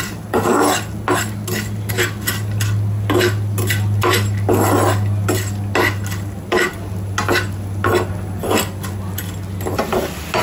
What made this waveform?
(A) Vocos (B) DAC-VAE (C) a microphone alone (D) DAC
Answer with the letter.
C